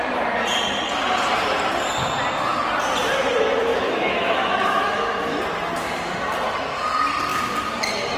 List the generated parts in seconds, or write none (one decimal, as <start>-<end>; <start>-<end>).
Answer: 3.7-5.4